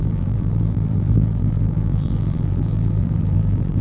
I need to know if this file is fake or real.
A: fake